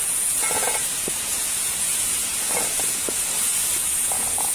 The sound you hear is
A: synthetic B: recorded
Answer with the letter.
A